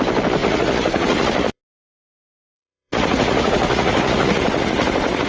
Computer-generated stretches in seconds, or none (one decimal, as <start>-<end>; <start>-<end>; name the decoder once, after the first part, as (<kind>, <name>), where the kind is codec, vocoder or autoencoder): 0.4-1.6 (vocoder, Vocos); 2.1-5.3